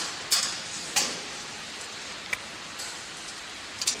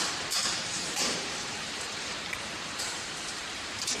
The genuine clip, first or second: first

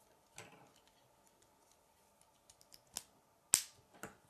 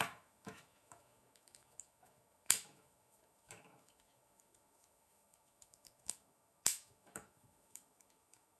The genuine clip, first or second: first